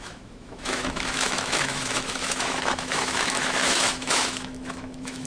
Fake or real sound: fake